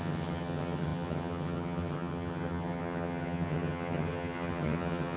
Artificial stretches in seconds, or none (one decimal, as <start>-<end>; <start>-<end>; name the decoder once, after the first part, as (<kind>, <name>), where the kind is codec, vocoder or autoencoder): 0.0-5.2 (vocoder, HiFi-GAN)